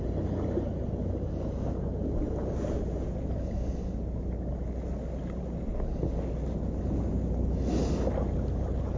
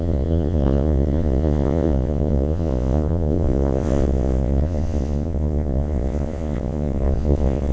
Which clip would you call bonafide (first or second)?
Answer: first